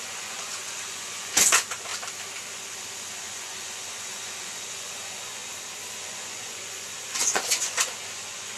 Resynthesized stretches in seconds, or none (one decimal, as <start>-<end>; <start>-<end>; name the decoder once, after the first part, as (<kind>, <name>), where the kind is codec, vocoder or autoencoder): 0.0-1.9 (vocoder, Vocos); 2.5-5.4; 5.9-8.6